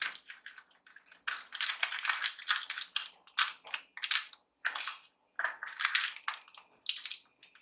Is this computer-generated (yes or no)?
no